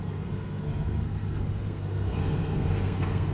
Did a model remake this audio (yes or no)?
yes